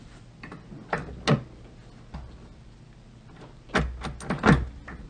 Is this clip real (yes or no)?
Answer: yes